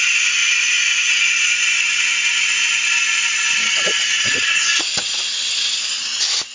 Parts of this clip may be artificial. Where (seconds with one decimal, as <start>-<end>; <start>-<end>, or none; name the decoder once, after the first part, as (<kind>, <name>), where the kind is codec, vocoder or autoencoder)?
none